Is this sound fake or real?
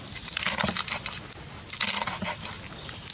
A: real